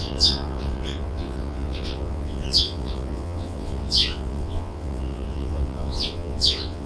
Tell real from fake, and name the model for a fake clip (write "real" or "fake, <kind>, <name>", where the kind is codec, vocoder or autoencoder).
fake, vocoder, WaveNeXt